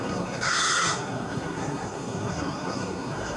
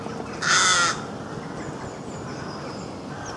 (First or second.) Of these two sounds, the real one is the second